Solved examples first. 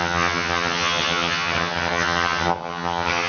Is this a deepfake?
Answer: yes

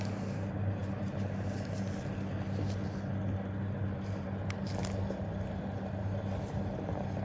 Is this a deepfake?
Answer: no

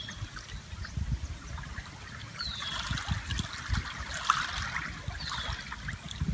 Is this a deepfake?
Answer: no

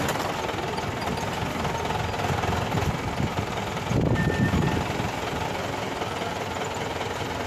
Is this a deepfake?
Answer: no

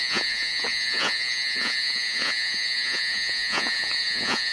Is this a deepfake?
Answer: yes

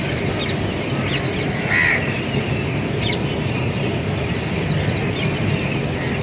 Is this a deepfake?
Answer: no